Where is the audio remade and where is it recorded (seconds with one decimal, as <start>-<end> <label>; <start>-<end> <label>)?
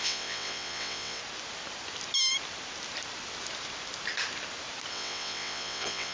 0.0-1.2 remade; 1.2-4.9 recorded; 4.9-6.1 remade